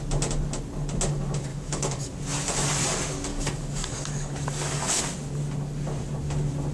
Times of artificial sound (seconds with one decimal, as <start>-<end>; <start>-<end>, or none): 1.5-2.1; 3.3-5.0